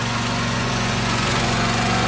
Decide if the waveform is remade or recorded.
remade